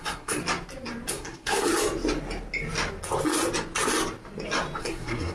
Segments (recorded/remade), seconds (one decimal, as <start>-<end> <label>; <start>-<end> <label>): 0.0-0.4 remade; 0.4-1.1 recorded; 1.1-1.7 remade; 1.7-4.8 recorded; 4.8-5.3 remade